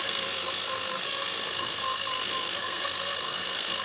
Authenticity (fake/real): fake